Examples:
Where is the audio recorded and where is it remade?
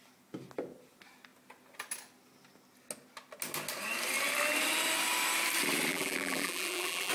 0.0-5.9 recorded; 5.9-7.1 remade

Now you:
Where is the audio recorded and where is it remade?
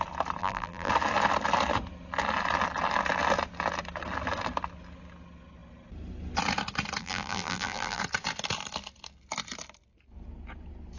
0.0-0.4 recorded; 0.4-0.9 remade; 0.9-7.0 recorded; 7.0-8.0 remade; 8.0-11.0 recorded